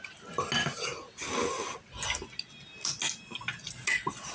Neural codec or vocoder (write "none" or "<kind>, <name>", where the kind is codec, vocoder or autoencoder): none